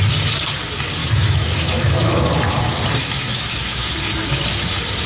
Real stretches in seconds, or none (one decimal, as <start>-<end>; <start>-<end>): 0.0-1.0; 2.2-3.0; 3.9-5.1